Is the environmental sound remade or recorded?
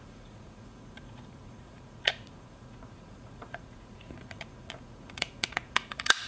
remade